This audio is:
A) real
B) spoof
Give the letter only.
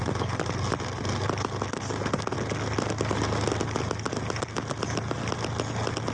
A